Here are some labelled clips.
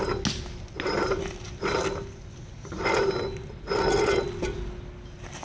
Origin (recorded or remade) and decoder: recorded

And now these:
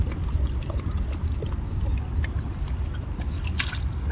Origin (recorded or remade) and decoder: recorded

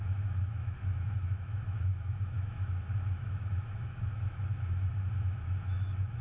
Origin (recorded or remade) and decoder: remade, autoencoder, DAC-VAE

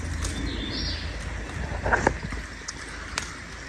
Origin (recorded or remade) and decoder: recorded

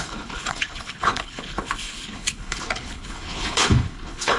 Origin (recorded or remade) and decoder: remade, codec, HILCodec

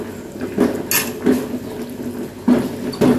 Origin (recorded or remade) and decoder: recorded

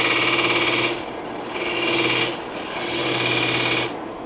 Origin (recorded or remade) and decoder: recorded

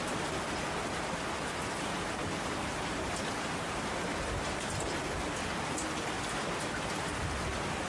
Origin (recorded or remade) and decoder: recorded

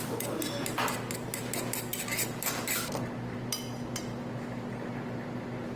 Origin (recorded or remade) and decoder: recorded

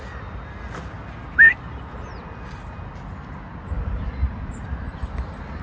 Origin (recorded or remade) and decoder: recorded